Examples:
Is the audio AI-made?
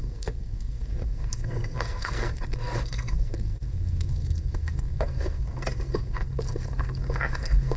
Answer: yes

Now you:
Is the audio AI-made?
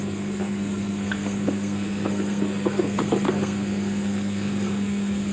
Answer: yes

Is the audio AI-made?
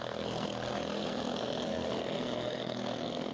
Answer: yes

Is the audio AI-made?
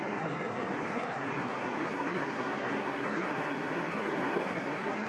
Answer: yes